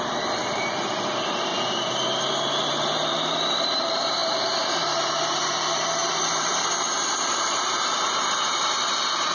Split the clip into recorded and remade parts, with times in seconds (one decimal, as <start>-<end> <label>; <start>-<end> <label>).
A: 0.0-1.5 remade; 1.5-2.7 recorded; 2.7-9.3 remade